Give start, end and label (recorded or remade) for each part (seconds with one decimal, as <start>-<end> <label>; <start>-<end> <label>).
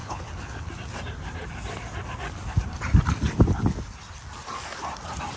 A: 0.0-0.7 remade; 0.7-5.4 recorded